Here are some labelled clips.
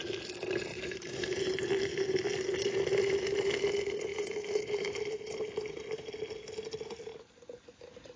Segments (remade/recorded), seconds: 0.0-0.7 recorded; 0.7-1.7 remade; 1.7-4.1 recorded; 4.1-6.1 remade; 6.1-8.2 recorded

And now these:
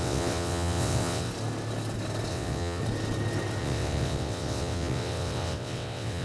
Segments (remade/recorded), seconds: 0.0-1.3 remade; 1.3-2.3 recorded; 2.3-2.8 remade; 2.8-3.6 recorded; 3.6-6.2 remade

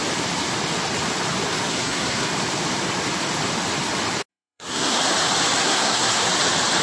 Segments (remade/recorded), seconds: 0.0-1.7 recorded; 1.7-2.3 remade; 2.3-4.3 recorded; 4.3-5.0 remade; 5.0-5.6 recorded; 5.6-6.3 remade; 6.3-6.8 recorded

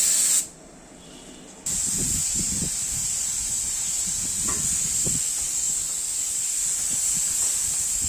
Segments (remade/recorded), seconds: 0.0-2.2 recorded; 2.2-4.2 remade; 4.2-8.1 recorded